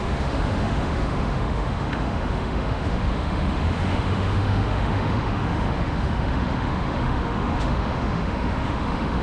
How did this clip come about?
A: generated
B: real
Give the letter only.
A